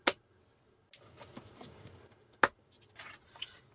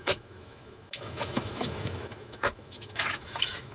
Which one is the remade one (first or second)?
second